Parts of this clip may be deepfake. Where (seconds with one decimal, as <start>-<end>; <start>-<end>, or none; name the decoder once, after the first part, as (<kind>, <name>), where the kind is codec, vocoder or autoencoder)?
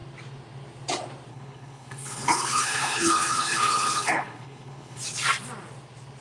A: 1.3-5.0 (codec, HILCodec)